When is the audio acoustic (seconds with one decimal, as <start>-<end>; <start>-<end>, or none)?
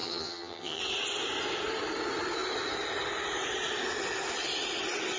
0.8-5.2